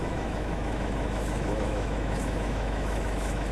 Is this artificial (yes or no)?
yes